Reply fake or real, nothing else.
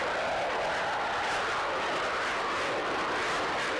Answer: real